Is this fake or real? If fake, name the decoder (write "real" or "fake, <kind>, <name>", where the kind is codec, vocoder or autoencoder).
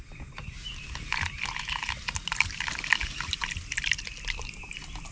real